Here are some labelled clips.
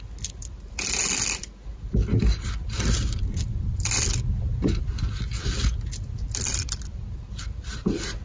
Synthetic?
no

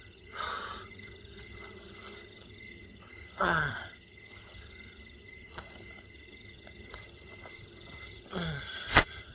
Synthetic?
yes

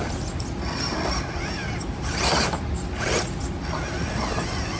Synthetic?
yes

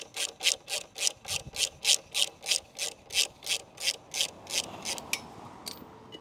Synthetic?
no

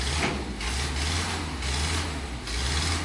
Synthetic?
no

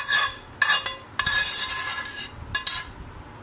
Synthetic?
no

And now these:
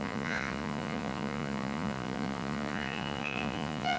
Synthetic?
yes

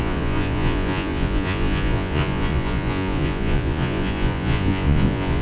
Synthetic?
yes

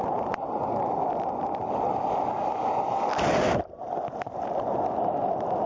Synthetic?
no